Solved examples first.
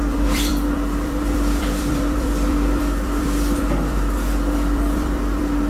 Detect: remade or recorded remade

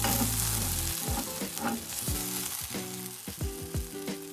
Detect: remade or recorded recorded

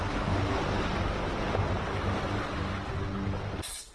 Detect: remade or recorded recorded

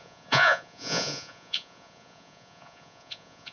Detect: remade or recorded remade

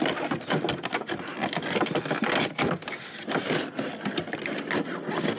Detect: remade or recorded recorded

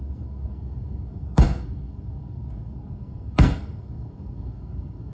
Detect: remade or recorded remade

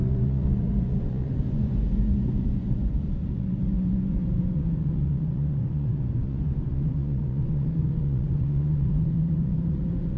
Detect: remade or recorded remade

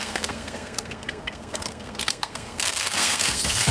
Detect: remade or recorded remade